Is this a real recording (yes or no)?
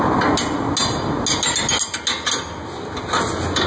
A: yes